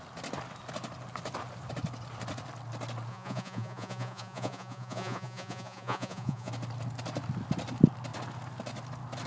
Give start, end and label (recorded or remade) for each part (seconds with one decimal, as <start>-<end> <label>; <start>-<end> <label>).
0.0-3.1 recorded; 3.1-6.5 remade; 6.5-9.3 recorded

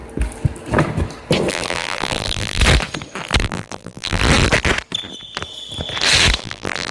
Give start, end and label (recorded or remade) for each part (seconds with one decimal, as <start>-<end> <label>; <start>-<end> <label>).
0.0-1.5 recorded; 1.5-2.6 remade; 2.6-3.4 recorded; 3.4-4.2 remade; 4.2-6.4 recorded; 6.4-6.9 remade

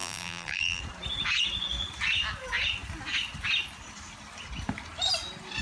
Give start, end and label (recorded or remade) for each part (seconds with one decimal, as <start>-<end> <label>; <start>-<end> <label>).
0.0-0.8 remade; 0.8-5.6 recorded